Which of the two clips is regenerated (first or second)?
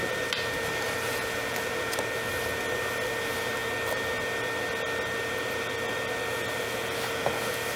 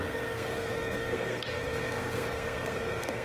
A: second